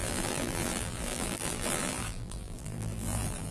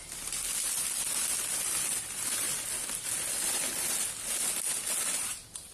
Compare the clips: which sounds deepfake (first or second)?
first